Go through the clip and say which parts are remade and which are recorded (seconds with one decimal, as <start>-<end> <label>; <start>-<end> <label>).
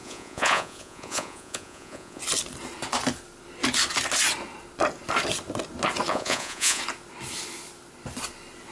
0.0-2.2 remade; 2.2-6.1 recorded; 6.1-6.8 remade; 6.8-8.7 recorded